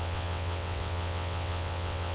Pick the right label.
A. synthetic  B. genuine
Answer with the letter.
A